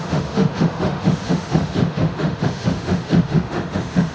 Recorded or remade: remade